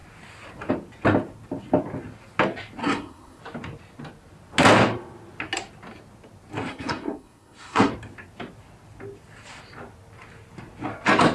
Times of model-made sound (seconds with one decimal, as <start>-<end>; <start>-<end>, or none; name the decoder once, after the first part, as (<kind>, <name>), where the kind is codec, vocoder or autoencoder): 2.8-3.4 (codec, SNAC); 6.7-7.9